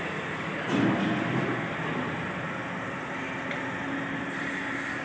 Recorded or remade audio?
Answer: recorded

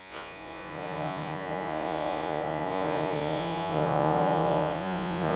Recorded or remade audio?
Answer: remade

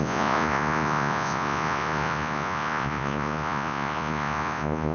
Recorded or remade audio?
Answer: remade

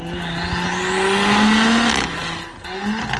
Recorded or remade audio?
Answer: recorded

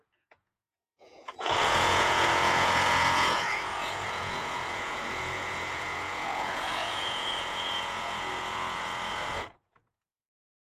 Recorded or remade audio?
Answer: remade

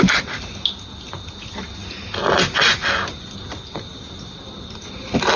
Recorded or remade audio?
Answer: recorded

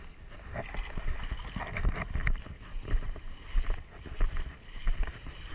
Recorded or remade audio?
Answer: recorded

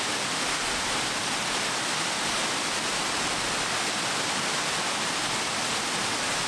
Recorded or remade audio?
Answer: recorded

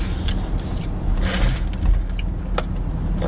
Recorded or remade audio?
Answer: recorded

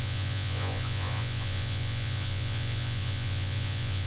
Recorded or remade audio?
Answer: remade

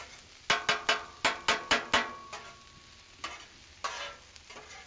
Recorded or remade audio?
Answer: recorded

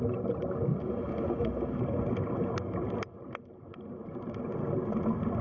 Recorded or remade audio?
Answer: recorded